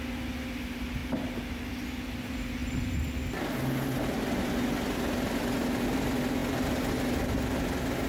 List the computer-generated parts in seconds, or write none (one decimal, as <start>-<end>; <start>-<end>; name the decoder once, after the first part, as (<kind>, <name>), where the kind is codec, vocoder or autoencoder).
none